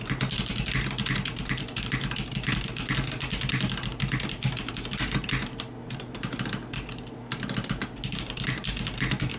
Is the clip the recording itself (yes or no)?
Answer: yes